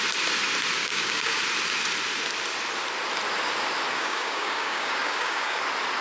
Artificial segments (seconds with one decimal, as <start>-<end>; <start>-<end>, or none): 0.8-1.4; 3.9-5.6